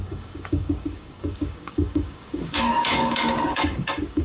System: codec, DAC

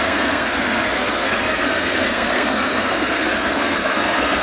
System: codec, SNAC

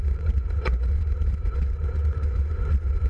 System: vocoder, Vocos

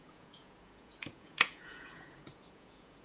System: vocoder, Vocos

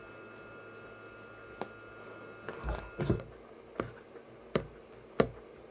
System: none